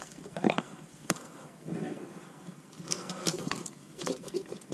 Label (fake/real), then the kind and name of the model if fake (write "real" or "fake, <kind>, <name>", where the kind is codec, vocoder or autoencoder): fake, codec, SNAC